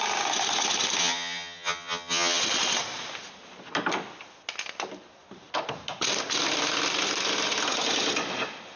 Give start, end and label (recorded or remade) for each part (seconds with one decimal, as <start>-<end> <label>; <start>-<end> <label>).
0.0-1.0 recorded; 1.0-2.4 remade; 2.4-8.8 recorded

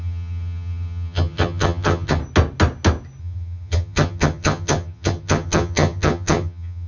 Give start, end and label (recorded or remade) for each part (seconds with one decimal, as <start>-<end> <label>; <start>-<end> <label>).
0.0-2.2 remade; 2.2-3.2 recorded; 3.2-6.9 remade

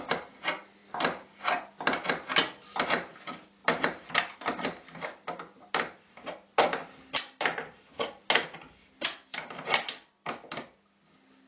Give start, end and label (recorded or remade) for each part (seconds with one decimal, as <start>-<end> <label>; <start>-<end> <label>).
0.0-11.5 recorded